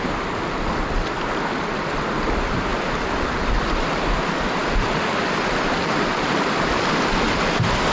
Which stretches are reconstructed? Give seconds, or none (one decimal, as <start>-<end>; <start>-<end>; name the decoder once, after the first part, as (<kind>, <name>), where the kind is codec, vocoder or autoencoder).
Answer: none

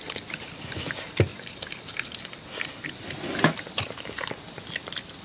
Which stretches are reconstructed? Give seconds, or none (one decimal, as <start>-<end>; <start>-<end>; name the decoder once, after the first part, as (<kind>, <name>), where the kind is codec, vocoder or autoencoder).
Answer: 1.3-4.4 (vocoder, BigVGAN v2)

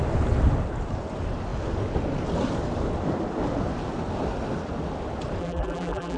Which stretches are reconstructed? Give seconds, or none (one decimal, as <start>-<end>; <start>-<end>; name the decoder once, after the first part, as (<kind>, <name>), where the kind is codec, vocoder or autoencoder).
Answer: 5.4-6.2 (vocoder, BigVGAN v2)

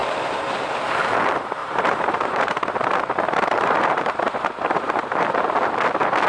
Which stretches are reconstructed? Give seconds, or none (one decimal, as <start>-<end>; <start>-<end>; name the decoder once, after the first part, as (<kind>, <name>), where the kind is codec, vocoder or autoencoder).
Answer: 0.0-1.0 (vocoder, BigVGAN v2); 1.6-5.4

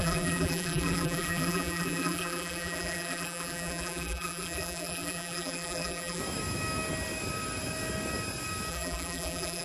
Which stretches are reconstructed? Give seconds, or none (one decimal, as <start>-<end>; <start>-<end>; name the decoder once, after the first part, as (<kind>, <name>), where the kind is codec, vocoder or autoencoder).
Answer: 0.0-6.2 (vocoder, BigVGAN v2); 8.7-9.6